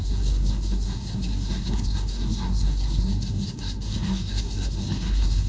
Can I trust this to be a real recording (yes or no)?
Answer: no